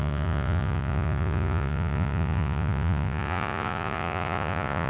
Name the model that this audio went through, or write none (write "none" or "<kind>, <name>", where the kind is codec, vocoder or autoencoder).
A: vocoder, Vocos